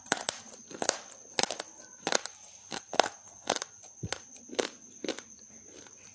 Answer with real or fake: real